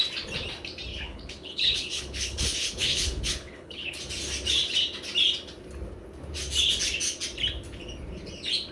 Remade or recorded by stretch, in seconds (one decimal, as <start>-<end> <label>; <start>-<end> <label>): 0.0-0.9 recorded; 0.9-4.0 remade; 4.0-8.7 recorded

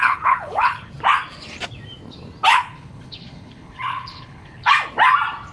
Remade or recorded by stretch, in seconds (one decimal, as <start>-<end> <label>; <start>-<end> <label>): 0.0-0.9 remade; 0.9-2.5 recorded; 2.5-4.7 remade; 4.7-5.5 recorded

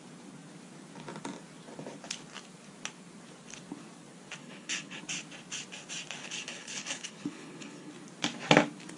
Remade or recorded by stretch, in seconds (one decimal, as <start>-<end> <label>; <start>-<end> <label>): 0.0-4.4 recorded; 4.4-5.0 remade; 5.0-6.2 recorded; 6.2-7.9 remade; 7.9-9.0 recorded

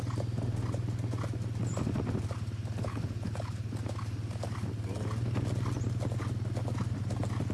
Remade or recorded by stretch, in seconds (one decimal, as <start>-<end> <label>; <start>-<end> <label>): 0.0-2.9 recorded; 2.9-3.7 remade; 3.7-7.5 recorded